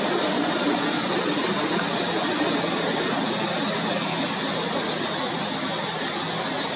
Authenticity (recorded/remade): recorded